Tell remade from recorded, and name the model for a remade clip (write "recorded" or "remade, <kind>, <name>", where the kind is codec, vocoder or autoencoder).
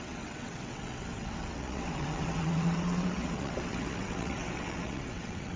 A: remade, vocoder, WaveNeXt